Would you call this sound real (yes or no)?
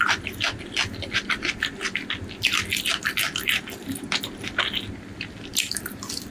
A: yes